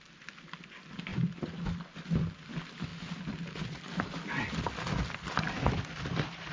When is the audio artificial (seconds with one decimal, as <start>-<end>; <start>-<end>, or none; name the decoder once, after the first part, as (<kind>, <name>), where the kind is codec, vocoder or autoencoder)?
1.1-1.6 (vocoder, BigVGAN v2)